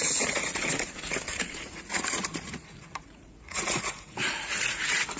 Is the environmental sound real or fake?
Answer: fake